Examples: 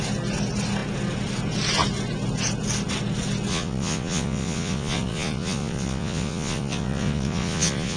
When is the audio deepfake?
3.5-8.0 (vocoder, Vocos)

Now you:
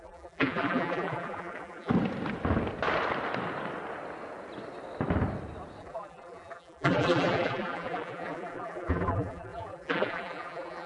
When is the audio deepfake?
0.0-1.9 (vocoder, BigVGAN v2); 5.8-10.9

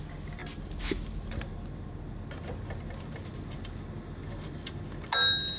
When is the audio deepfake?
none

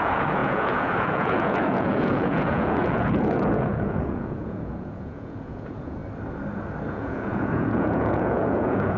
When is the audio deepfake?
0.0-6.0 (vocoder, Vocos); 6.9-9.0